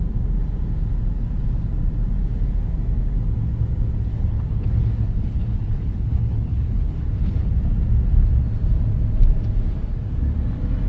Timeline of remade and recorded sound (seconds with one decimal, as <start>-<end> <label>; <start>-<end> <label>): 0.0-4.1 recorded; 4.1-7.5 remade; 7.5-10.9 recorded